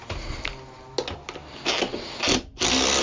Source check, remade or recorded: recorded